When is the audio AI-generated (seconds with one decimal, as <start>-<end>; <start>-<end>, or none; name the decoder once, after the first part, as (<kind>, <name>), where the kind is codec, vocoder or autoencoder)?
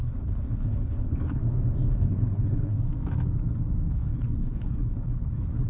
0.0-1.4 (codec, HILCodec); 1.9-2.7; 3.9-5.7